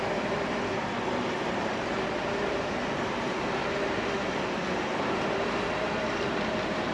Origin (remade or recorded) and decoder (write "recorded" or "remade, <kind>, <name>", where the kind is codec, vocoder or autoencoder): remade, vocoder, BigVGAN v2